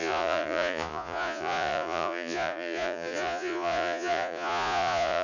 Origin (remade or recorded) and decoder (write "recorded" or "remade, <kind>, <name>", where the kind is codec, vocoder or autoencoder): remade, vocoder, Vocos